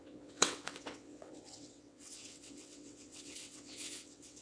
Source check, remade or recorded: remade